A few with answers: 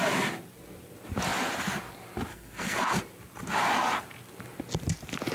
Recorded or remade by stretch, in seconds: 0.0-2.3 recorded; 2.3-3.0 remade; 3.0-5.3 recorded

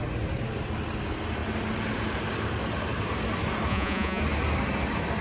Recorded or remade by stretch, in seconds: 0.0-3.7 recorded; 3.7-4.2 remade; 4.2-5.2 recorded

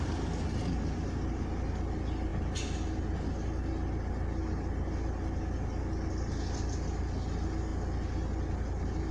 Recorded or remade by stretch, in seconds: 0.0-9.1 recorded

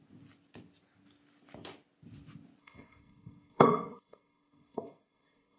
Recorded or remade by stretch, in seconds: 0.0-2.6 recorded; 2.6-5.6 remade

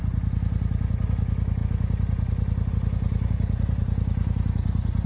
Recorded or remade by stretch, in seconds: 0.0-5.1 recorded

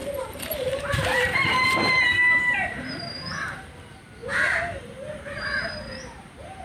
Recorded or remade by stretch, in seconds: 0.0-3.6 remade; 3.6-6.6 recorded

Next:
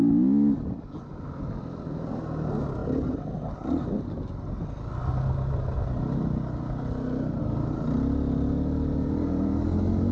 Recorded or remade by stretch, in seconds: 0.0-10.1 recorded